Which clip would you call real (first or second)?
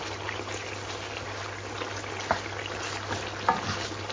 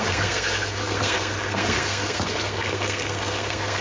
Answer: first